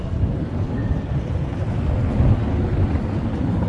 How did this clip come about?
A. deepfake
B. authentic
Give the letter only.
B